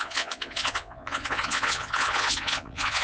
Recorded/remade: remade